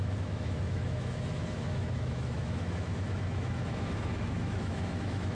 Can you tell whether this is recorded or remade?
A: remade